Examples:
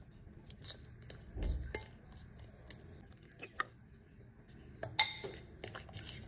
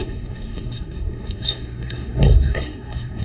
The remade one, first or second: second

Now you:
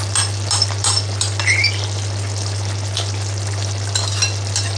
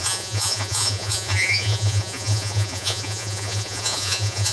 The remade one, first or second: second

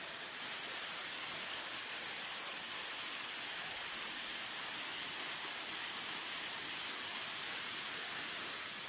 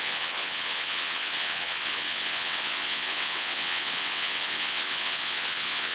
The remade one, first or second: second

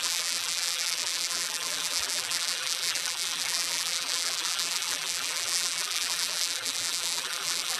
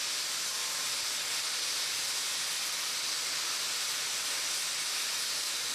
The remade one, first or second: first